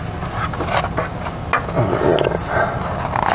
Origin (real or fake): real